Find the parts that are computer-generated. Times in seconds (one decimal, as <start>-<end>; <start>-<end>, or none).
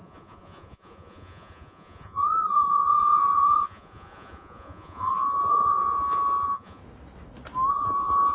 0.0-6.8; 7.7-8.3